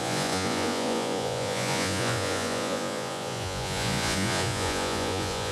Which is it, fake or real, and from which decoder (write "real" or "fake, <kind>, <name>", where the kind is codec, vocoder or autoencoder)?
fake, vocoder, Vocos